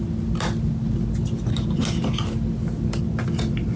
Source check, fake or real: real